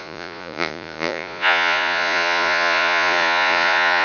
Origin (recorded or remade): remade